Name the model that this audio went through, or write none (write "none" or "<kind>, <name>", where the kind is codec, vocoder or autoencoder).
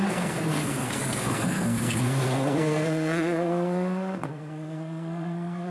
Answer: codec, SNAC